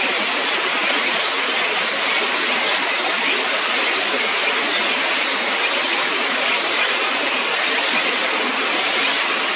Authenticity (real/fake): real